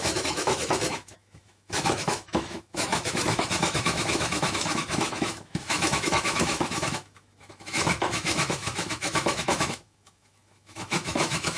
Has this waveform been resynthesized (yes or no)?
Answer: yes